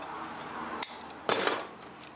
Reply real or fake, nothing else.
real